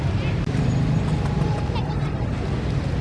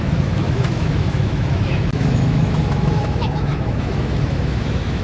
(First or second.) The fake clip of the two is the second